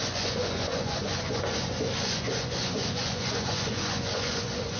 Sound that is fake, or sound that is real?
fake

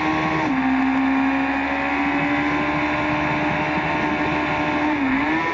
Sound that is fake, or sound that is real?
real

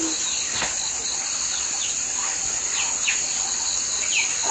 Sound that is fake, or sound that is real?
real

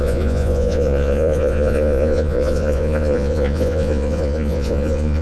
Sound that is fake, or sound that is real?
fake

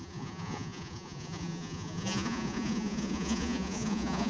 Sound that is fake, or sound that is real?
fake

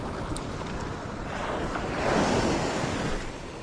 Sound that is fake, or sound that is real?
real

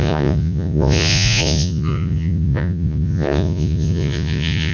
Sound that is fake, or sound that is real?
fake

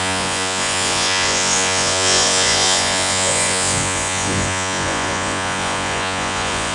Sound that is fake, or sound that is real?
fake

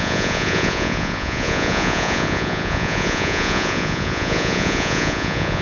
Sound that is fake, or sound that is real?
fake